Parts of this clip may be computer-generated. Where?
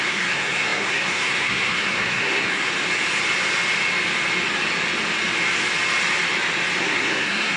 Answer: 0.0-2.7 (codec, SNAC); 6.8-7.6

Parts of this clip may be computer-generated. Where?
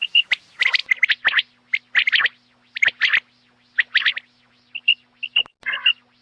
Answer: none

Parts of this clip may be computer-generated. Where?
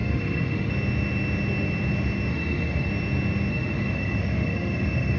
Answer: 0.0-0.7 (autoencoder, DAC-VAE); 2.3-2.9; 3.5-5.2